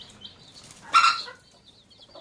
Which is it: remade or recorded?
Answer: recorded